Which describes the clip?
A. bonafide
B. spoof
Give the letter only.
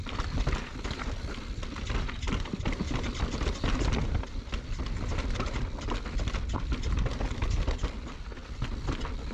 A